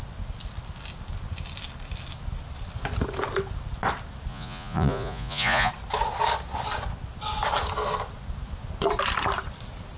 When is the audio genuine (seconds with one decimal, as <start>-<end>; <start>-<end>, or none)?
0.0-4.3; 5.7-10.0